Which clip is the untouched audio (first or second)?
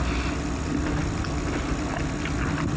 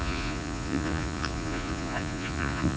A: first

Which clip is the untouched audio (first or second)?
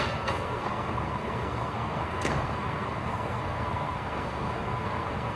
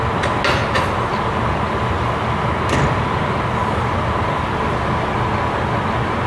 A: second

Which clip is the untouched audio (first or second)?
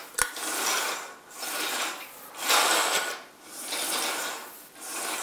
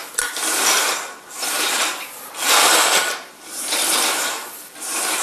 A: first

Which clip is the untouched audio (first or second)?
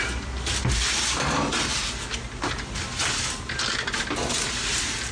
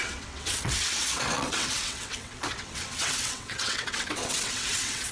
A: first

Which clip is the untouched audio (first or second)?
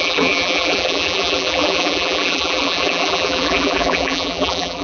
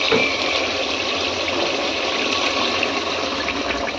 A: second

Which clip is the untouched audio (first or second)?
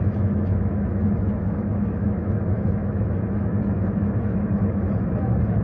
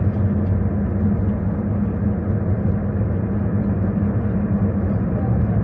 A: second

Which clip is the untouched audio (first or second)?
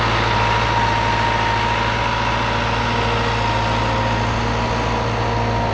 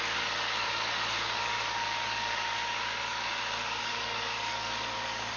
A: first